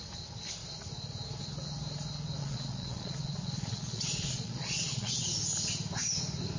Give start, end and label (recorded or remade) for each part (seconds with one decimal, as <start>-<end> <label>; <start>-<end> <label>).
0.0-2.4 recorded; 2.4-5.2 remade; 5.2-6.6 recorded